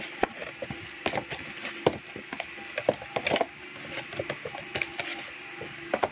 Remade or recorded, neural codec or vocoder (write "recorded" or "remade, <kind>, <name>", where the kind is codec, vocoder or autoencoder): recorded